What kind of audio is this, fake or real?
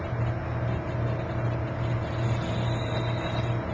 real